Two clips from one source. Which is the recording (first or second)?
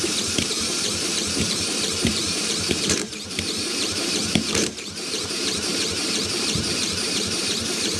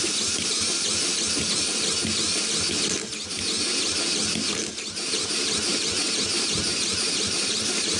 second